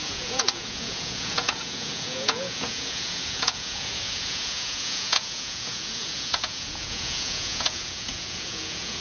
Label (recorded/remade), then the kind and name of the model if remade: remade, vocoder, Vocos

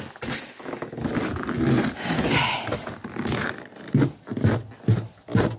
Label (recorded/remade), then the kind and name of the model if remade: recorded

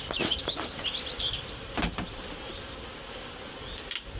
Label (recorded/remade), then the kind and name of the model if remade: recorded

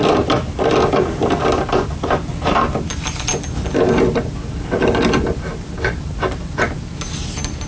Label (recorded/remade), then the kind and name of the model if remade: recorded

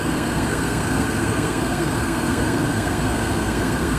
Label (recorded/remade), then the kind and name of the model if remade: remade, codec, SNAC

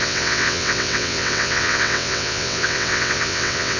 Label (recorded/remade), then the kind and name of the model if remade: remade, vocoder, WaveNeXt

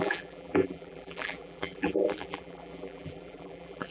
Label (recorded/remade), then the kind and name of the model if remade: remade, vocoder, BigVGAN v2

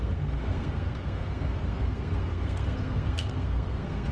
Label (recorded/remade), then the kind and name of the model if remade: remade, codec, SNAC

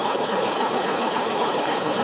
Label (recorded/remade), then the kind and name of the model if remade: remade, codec, HILCodec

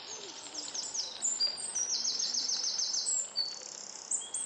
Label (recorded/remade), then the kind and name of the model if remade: recorded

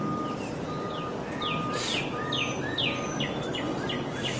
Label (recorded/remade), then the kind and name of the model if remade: recorded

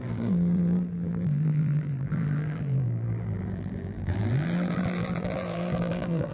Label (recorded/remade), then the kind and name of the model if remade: remade, vocoder, BigVGAN v2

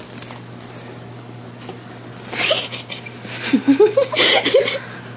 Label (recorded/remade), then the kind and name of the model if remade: recorded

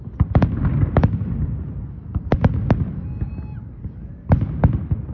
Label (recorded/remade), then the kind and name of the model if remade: recorded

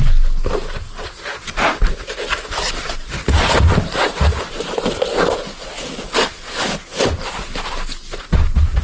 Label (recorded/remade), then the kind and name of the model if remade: recorded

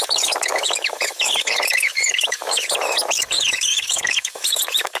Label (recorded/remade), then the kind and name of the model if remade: remade, autoencoder, DAC-VAE